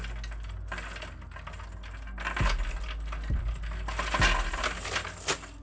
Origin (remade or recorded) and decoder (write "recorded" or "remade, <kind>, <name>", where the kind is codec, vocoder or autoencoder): recorded